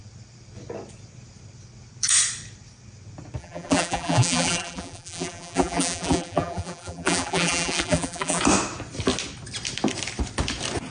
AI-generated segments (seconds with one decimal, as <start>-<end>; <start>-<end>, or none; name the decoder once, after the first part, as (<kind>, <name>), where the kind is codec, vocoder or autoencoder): 3.4-8.4 (vocoder, BigVGAN v2)